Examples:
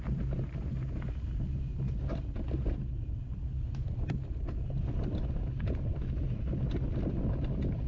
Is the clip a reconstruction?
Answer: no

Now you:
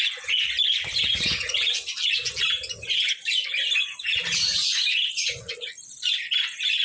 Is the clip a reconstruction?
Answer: no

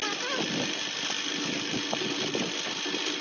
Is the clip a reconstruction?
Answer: no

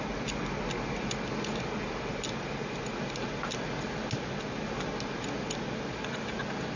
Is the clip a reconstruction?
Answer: no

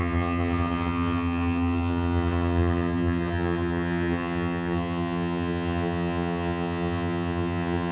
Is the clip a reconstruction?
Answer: yes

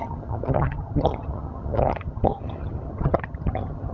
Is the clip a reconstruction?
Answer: yes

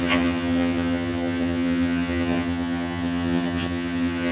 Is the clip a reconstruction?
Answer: yes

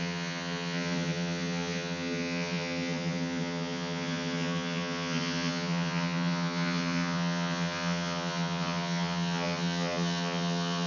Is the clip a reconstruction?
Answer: yes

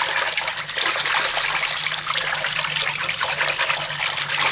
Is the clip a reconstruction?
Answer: no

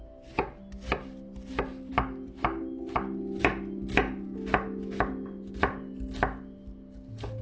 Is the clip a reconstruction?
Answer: no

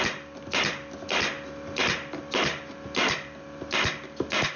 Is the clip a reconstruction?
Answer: no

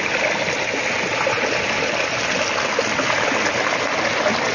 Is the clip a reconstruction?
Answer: no